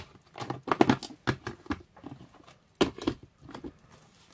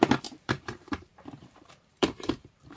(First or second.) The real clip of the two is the first